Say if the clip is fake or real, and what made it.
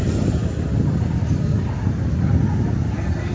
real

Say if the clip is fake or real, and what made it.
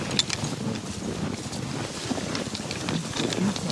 real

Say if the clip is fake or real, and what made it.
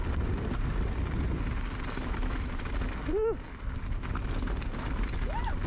real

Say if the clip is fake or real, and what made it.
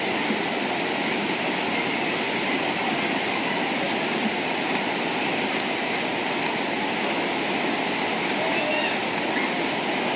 real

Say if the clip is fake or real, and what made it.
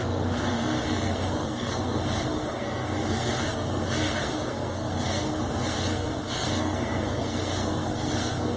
fake, codec, SNAC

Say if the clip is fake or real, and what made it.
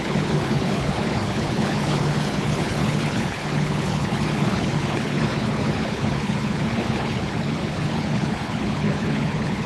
fake, codec, HILCodec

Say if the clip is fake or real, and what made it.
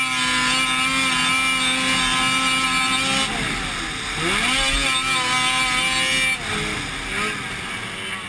real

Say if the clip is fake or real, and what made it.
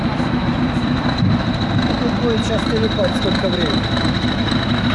real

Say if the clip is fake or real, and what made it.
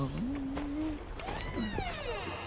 real